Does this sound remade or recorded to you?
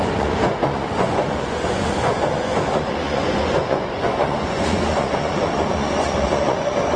remade